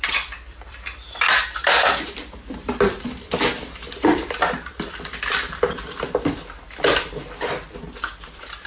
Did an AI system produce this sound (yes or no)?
yes